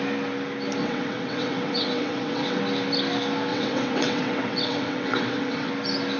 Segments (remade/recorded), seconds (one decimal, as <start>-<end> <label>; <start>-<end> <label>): 0.0-0.8 recorded; 0.8-2.6 remade; 2.6-3.5 recorded; 3.5-5.7 remade; 5.7-6.2 recorded